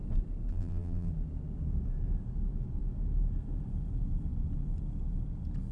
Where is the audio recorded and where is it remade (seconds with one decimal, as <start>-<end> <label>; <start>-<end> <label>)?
0.0-0.5 recorded; 0.5-1.1 remade; 1.1-5.7 recorded